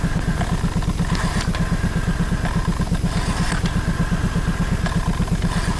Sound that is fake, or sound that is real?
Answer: real